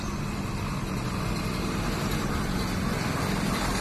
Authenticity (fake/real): real